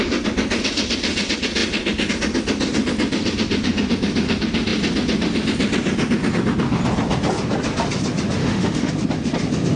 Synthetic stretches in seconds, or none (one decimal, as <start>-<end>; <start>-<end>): 8.4-8.9